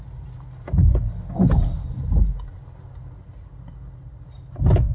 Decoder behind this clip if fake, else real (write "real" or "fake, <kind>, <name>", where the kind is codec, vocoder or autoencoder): real